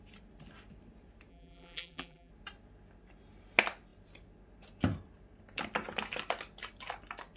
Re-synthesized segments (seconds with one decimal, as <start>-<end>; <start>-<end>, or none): 1.3-2.3